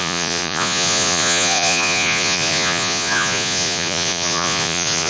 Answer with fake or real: fake